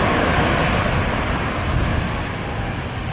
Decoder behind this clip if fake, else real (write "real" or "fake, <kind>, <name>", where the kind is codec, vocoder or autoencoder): real